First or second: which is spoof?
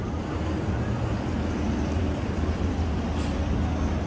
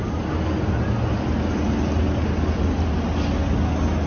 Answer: first